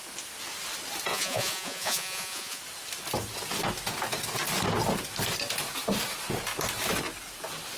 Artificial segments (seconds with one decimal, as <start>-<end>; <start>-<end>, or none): 1.1-2.6